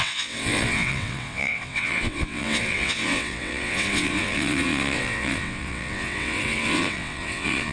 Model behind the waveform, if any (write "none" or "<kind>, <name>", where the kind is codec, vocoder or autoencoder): vocoder, WaveNeXt